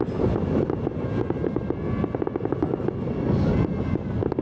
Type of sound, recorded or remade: recorded